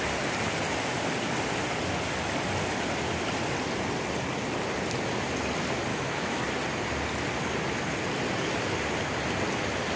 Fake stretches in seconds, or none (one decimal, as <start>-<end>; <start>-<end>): 5.9-6.4